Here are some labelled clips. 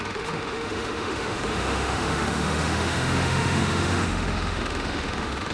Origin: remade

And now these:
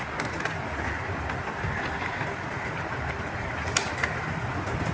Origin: recorded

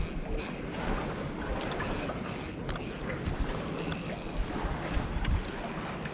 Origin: recorded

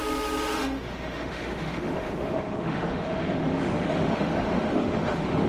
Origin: remade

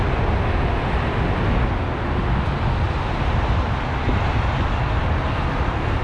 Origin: recorded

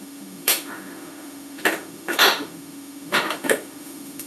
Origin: remade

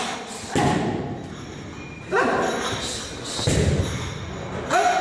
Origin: recorded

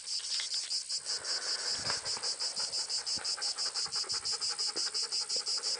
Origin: recorded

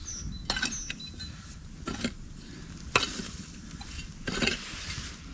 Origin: recorded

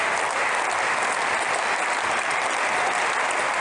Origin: recorded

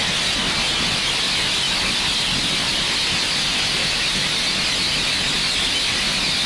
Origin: recorded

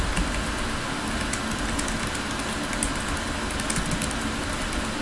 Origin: recorded